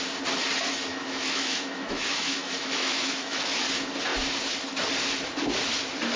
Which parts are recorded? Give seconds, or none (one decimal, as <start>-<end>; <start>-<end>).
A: 0.0-0.9; 3.5-6.2